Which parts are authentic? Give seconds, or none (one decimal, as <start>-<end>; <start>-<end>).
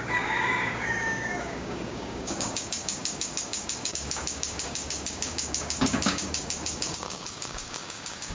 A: none